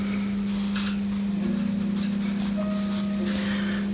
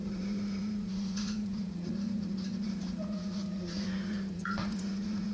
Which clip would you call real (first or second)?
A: first